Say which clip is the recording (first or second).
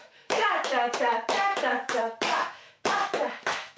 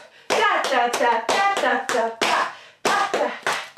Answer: second